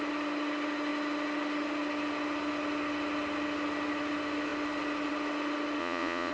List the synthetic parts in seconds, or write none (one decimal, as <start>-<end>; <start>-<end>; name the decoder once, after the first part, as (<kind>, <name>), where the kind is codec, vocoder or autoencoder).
5.8-6.3 (vocoder, Vocos)